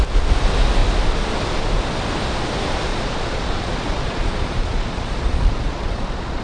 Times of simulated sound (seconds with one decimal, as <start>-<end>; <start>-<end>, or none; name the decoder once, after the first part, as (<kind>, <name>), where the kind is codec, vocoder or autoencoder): 2.9-6.4 (vocoder, Vocos)